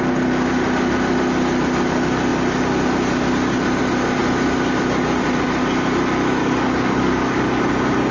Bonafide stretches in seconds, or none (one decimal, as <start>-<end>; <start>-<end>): 0.0-6.4; 7.6-8.1